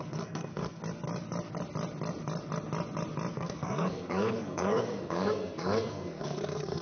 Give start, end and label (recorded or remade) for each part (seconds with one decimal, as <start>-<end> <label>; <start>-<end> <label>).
0.0-0.8 remade; 0.8-3.3 recorded; 3.3-6.8 remade